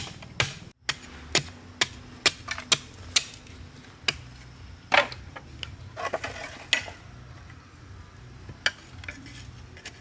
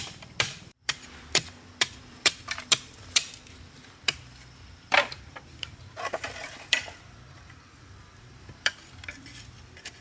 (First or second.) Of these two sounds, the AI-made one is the second